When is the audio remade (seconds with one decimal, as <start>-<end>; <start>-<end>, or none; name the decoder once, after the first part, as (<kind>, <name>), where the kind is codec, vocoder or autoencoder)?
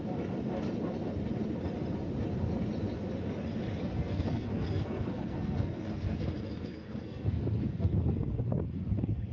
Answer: 3.8-9.3 (codec, SNAC)